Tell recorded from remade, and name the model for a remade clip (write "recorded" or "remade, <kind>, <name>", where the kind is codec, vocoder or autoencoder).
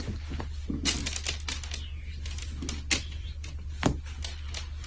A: recorded